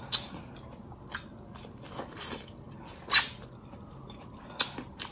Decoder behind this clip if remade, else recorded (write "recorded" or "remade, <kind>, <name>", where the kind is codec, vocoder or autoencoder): recorded